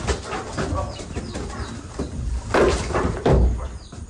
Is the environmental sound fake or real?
fake